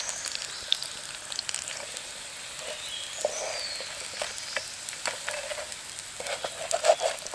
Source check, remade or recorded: recorded